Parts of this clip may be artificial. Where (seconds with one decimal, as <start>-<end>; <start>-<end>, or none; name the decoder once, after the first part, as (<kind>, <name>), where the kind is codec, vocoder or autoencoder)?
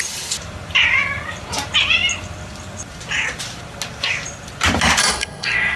5.0-5.8 (codec, SNAC)